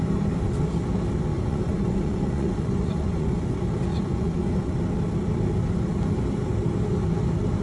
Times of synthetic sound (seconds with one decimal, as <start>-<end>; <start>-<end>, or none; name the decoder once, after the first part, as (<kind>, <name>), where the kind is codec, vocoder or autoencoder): 1.3-3.4 (vocoder, Vocos); 3.9-4.8